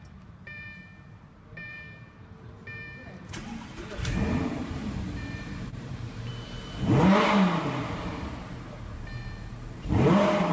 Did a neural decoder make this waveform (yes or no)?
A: yes